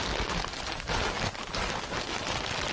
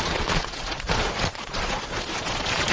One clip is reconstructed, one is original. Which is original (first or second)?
first